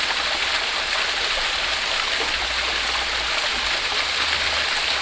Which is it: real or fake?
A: real